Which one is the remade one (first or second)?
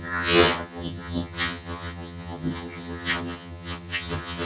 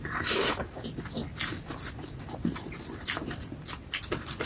first